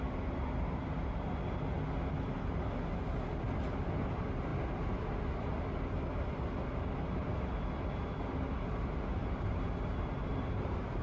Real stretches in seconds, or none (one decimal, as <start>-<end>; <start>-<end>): 0.0-10.3

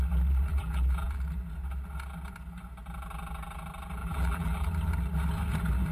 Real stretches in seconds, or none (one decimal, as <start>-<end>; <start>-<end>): 0.0-0.5; 1.2-4.0; 4.7-5.9

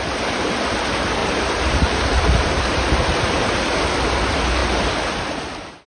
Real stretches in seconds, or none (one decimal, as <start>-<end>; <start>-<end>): 0.0-1.2; 3.2-6.0